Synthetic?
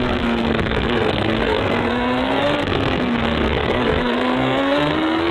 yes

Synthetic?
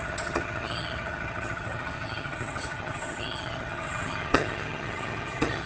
yes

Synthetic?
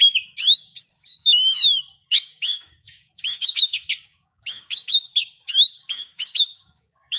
yes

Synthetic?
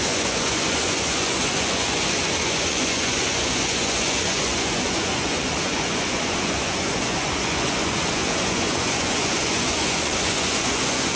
yes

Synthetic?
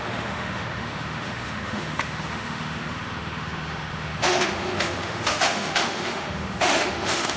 yes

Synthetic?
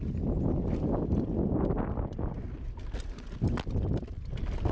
no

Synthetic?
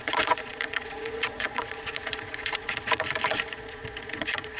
yes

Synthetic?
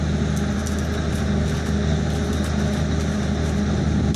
no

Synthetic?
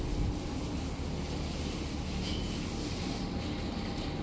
no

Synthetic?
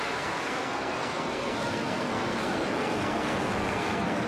yes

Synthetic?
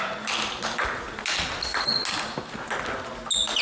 no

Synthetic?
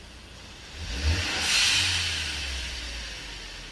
no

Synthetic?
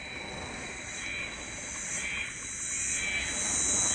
no